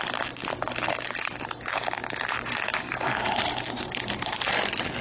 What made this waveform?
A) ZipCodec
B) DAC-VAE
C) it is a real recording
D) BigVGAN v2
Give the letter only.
C